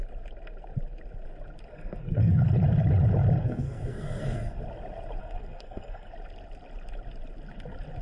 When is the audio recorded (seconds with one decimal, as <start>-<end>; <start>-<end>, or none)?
0.0-1.7; 2.4-3.4; 4.6-5.2; 6.1-8.0